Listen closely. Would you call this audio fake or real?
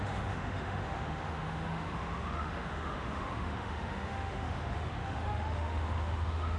fake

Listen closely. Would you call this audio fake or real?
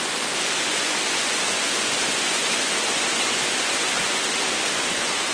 fake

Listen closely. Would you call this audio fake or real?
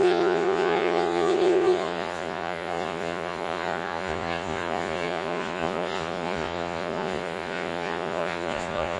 fake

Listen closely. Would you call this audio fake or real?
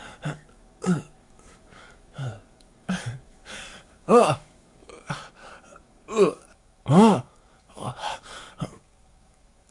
fake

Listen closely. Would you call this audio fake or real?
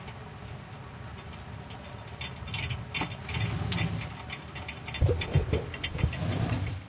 real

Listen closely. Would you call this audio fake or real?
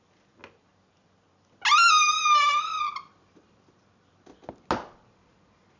real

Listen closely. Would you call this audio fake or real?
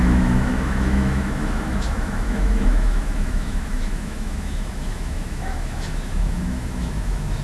fake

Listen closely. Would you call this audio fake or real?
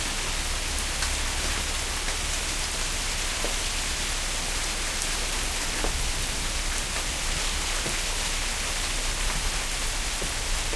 real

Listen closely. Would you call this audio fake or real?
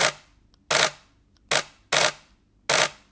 real